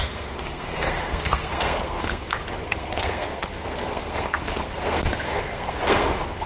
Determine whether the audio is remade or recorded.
remade